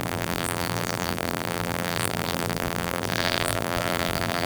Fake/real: fake